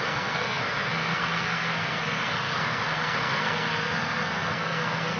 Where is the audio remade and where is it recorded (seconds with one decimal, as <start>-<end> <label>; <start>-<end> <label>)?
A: 0.0-5.2 remade